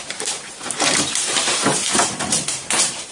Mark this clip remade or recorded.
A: remade